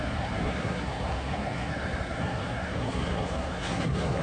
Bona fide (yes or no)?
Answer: no